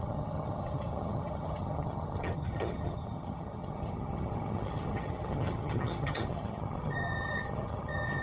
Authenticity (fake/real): fake